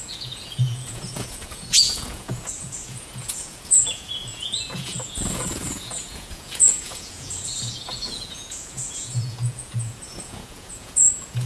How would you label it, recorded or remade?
remade